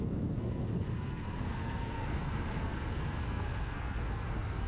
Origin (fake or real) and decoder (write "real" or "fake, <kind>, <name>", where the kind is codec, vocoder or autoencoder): fake, codec, SNAC